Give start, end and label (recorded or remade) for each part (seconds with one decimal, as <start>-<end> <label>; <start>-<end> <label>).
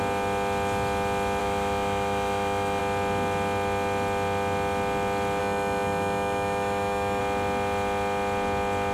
0.0-1.4 recorded; 1.4-2.8 remade; 2.8-5.4 recorded; 5.4-7.2 remade; 7.2-8.9 recorded